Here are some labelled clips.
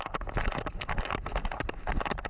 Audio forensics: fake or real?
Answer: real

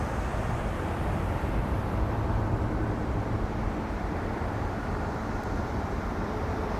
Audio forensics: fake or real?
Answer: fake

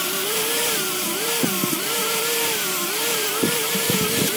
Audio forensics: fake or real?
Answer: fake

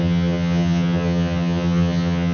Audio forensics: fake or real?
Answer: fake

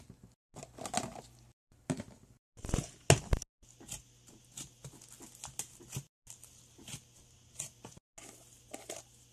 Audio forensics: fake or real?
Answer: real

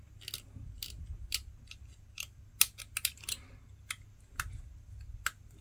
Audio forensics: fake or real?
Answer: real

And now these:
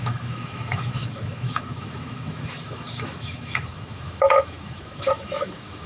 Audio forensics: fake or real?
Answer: fake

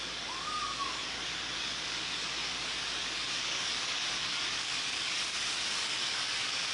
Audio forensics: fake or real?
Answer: fake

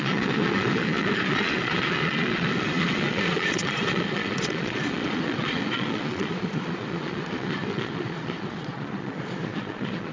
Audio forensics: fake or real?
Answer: fake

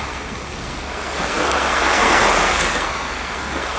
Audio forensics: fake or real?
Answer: fake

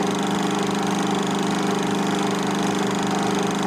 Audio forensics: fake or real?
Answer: real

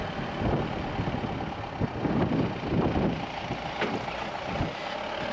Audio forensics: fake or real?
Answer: real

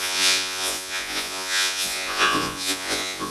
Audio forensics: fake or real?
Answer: fake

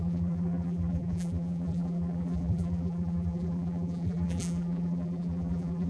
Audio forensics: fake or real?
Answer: fake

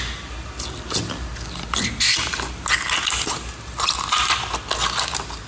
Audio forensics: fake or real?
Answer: real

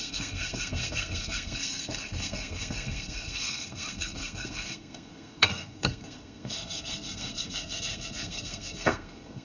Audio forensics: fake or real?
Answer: fake